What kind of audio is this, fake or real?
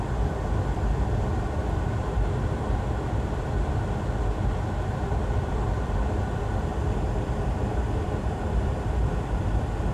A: fake